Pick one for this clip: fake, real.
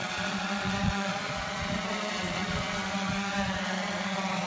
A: fake